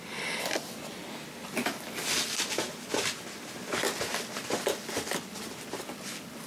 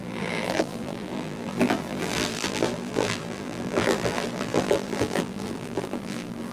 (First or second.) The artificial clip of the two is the second